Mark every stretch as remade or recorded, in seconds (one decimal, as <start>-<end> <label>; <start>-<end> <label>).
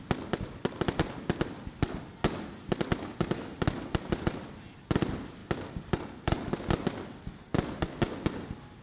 0.0-8.8 recorded